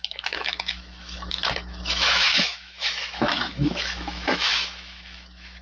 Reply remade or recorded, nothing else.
remade